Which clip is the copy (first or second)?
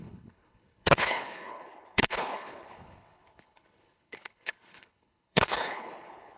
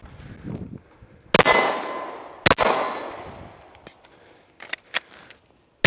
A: first